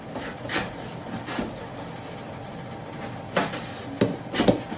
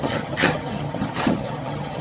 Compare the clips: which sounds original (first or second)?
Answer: first